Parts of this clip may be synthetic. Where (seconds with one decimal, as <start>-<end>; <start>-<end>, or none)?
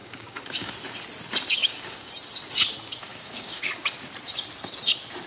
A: 0.0-0.7; 1.6-2.1; 3.1-3.9